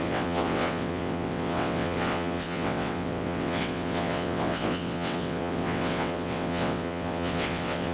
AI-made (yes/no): yes